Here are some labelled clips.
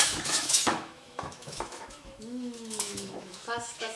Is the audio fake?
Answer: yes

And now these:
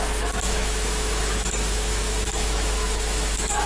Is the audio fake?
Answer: yes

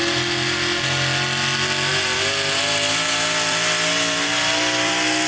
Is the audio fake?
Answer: no